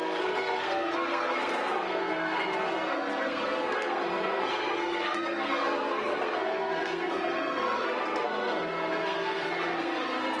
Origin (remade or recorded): remade